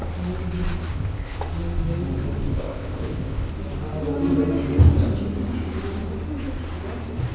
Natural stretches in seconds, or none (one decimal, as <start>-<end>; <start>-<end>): 0.0-0.9; 1.4-2.5; 3.5-7.3